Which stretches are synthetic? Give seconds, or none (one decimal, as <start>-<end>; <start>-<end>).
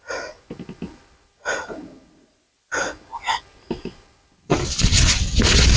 none